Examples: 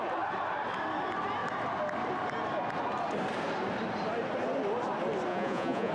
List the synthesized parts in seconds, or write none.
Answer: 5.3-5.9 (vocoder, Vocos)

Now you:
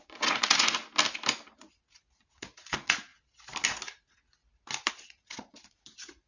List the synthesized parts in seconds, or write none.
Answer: 0.0-0.8 (vocoder, Vocos); 1.6-3.1; 4.0-4.4; 4.9-6.3

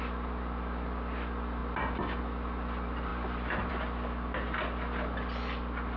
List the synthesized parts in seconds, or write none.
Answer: none

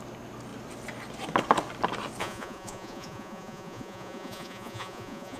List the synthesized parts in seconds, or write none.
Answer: 2.2-5.4 (vocoder, Vocos)

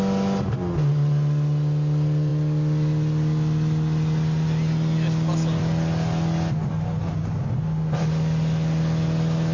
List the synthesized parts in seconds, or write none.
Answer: none

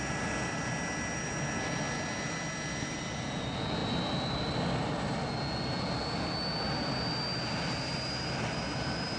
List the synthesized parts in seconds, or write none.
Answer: none

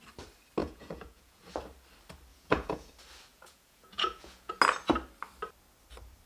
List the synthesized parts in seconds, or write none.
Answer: 0.6-1.4 (vocoder, Vocos); 2.3-2.9; 3.3-4.6

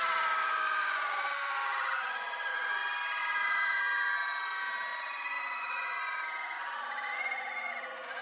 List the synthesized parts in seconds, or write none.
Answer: 0.4-2.8 (vocoder, Vocos); 3.2-3.8; 4.9-8.2